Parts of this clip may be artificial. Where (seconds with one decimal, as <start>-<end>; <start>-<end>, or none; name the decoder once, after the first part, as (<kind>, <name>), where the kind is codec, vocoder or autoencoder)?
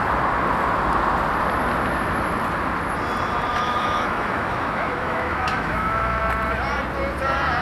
3.5-6.2 (autoencoder, DAC-VAE)